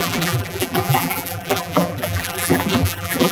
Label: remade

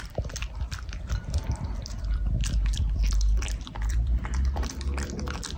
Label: remade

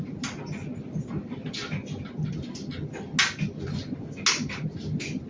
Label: recorded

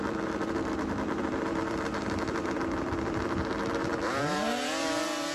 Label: remade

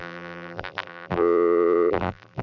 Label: remade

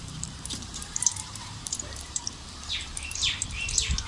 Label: remade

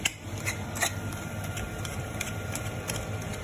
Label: remade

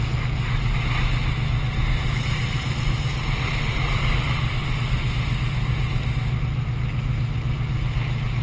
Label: recorded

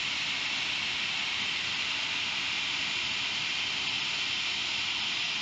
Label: recorded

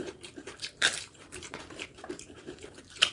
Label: remade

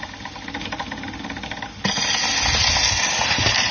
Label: recorded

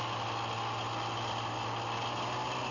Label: recorded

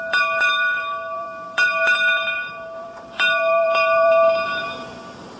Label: remade